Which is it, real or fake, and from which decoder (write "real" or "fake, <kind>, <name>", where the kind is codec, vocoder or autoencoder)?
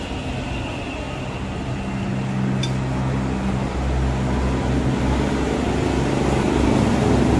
real